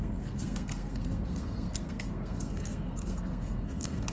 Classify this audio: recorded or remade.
remade